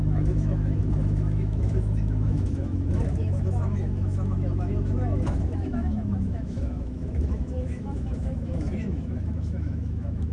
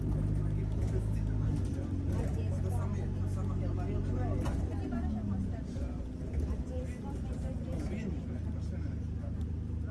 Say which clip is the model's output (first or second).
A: first